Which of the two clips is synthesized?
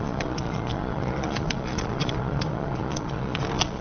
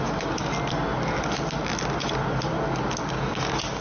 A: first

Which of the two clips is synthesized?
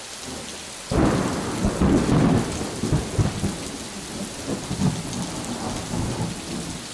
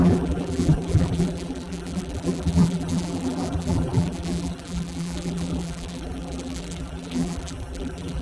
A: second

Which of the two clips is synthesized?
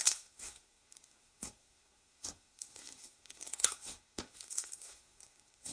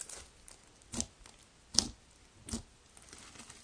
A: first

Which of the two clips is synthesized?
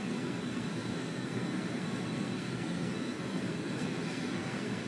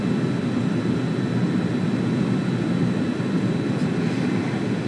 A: first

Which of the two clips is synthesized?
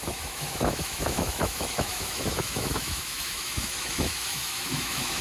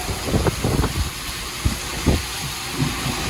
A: first